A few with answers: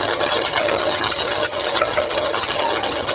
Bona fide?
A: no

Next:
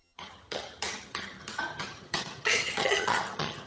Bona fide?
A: no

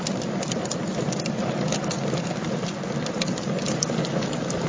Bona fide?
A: yes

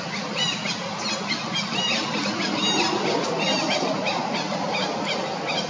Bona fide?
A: yes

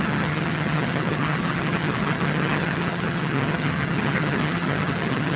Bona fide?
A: no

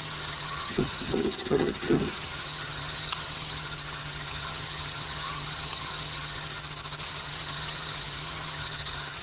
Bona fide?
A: no